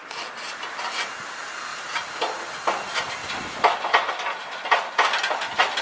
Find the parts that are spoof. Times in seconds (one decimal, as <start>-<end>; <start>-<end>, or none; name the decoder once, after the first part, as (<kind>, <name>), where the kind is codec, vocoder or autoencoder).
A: 0.0-0.8 (vocoder, BigVGAN v2); 1.7-2.3; 3.2-4.1